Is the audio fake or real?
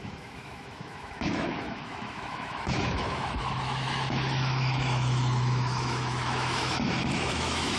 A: fake